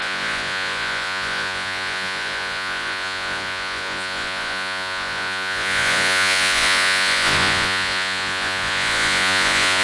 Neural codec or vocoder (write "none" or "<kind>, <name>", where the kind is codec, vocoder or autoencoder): vocoder, Vocos